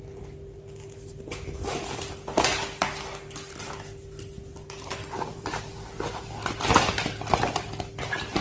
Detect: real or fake real